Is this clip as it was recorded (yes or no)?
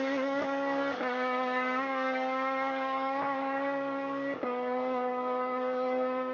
no